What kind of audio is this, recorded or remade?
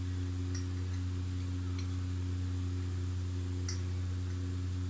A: recorded